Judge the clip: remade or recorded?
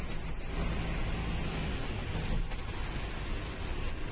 recorded